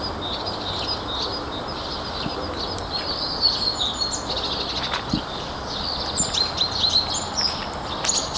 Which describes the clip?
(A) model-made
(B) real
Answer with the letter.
B